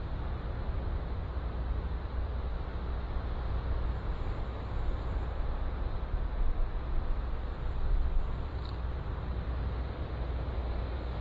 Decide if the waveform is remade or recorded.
recorded